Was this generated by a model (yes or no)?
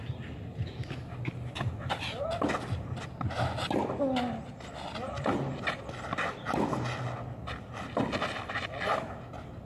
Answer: no